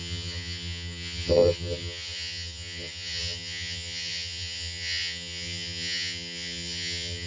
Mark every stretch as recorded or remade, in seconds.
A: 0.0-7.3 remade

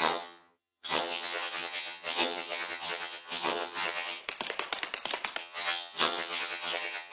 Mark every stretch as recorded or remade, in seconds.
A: 0.0-4.2 remade; 4.2-5.4 recorded; 5.4-7.1 remade

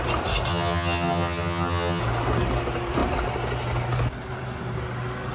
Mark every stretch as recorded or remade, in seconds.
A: 0.0-0.5 recorded; 0.5-2.0 remade; 2.0-5.3 recorded

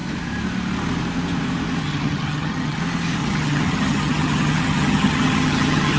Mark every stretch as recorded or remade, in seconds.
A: 0.0-1.8 recorded; 1.8-2.8 remade; 2.8-3.2 recorded; 3.2-6.0 remade

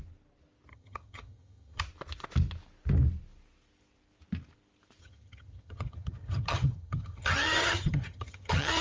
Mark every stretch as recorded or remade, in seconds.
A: 0.0-0.7 recorded; 0.7-1.8 remade; 1.8-5.0 recorded; 5.0-8.8 remade